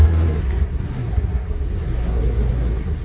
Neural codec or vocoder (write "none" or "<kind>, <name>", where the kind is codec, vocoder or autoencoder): codec, SNAC